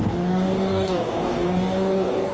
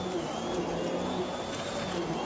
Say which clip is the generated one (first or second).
first